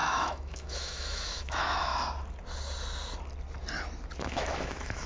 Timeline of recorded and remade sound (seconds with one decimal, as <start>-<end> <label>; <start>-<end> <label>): 0.0-1.9 remade; 1.9-4.2 recorded; 4.2-5.1 remade